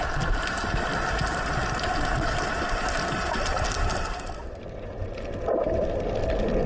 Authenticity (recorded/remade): recorded